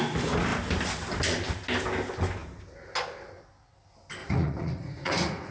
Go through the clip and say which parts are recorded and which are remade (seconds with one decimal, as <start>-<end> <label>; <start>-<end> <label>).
0.0-4.2 recorded; 4.2-5.5 remade